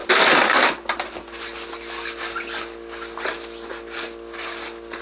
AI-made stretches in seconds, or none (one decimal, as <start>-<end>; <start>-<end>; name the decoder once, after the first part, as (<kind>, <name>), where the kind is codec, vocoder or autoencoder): none